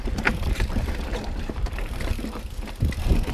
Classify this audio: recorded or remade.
remade